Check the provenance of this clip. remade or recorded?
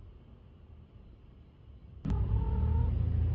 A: recorded